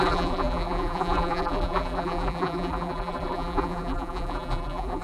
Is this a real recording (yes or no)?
no